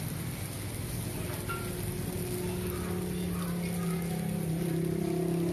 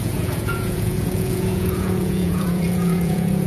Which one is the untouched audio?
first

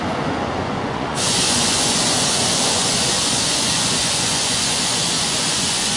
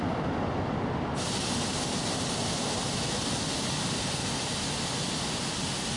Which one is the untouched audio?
second